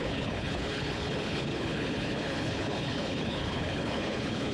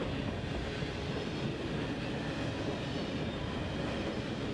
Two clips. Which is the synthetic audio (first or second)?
first